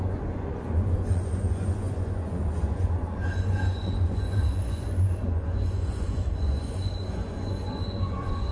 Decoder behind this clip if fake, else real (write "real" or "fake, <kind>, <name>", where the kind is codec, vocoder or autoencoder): fake, vocoder, Vocos